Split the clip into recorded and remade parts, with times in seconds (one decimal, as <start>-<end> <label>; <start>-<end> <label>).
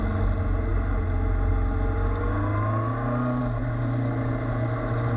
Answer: 0.0-5.2 recorded